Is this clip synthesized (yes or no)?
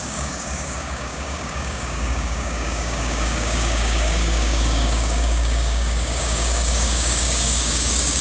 yes